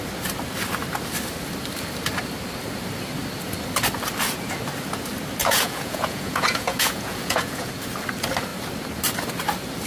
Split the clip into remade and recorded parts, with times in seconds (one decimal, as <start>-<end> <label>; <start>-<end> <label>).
0.0-5.4 recorded; 5.4-7.7 remade; 7.7-9.9 recorded